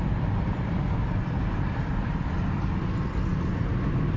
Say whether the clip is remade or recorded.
remade